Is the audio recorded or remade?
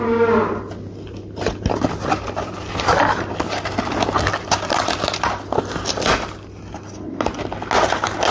recorded